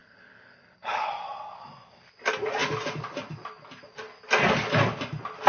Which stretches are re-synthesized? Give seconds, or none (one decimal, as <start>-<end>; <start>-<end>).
0.0-1.1